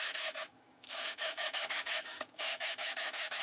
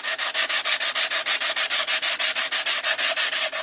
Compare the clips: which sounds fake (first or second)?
first